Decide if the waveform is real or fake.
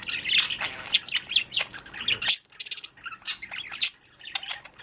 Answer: real